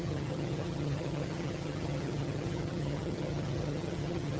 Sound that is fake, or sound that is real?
fake